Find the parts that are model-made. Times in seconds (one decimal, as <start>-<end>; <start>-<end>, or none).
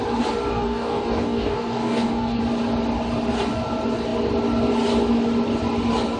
0.5-2.4